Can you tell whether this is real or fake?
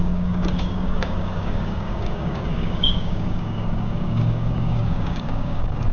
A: fake